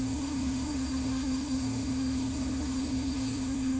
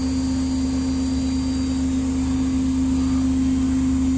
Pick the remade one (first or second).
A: first